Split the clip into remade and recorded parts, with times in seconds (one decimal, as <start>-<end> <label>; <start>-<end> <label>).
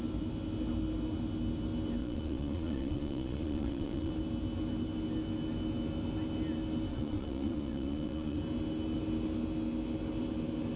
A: 0.0-2.0 recorded; 2.0-4.1 remade; 4.1-6.9 recorded; 6.9-8.4 remade; 8.4-10.8 recorded